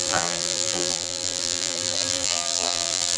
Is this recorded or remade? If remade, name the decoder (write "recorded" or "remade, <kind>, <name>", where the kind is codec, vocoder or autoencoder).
remade, vocoder, BigVGAN v2